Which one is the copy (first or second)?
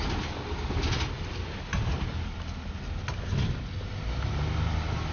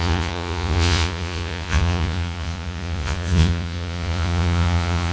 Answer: second